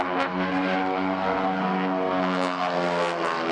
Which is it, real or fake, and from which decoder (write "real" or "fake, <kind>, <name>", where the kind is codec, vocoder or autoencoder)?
fake, codec, SNAC